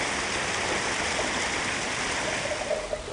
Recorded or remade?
recorded